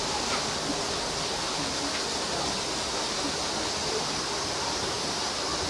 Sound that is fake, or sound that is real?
real